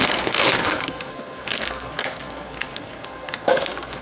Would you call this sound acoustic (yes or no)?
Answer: no